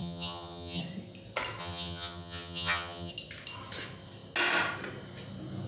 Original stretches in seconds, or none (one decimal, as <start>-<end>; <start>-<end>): 0.8-1.6; 3.1-5.7